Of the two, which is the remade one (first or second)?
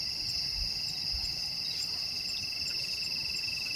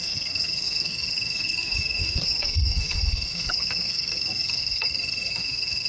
second